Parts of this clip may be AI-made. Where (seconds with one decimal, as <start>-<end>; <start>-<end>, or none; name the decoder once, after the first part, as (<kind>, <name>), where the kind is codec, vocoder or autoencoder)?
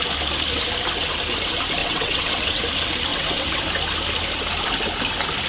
1.8-2.6 (vocoder, WaveNeXt); 3.1-3.6